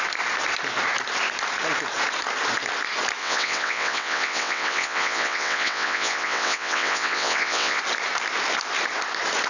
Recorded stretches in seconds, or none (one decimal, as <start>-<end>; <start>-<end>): 0.0-3.2; 7.8-9.5